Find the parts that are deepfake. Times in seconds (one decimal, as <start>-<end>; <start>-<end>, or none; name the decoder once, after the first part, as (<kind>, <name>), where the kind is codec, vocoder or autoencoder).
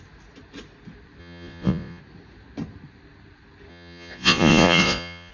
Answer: 1.2-2.0 (vocoder, Vocos); 3.7-5.3